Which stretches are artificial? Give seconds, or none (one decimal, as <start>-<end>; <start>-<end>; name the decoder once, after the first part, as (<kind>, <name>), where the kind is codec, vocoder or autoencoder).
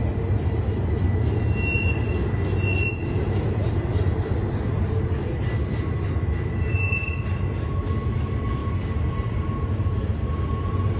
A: none